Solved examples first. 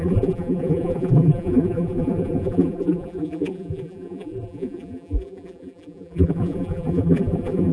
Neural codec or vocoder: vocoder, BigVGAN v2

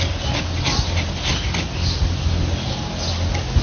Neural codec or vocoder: none